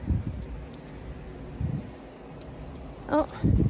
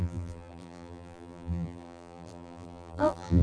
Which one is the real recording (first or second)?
first